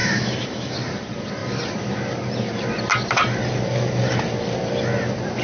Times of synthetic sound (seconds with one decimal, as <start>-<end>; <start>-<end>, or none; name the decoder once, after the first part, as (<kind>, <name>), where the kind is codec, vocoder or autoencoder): 0.0-0.7 (autoencoder, DAC-VAE)